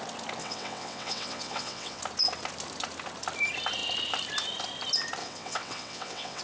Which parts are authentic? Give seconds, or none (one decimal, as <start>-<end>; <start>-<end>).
0.0-0.4; 2.0-5.2